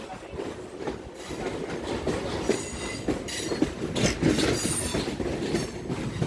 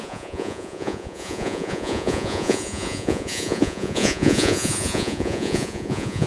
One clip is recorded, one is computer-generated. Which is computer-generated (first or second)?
second